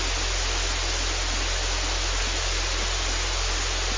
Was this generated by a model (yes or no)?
no